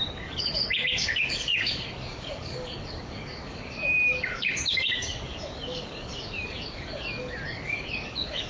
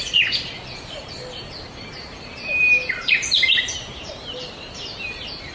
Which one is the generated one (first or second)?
first